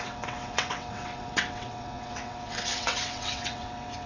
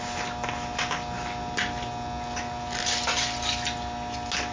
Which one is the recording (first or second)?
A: second